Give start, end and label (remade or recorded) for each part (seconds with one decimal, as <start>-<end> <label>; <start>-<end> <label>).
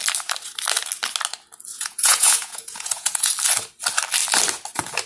0.0-1.7 recorded; 1.7-3.3 remade; 3.3-5.1 recorded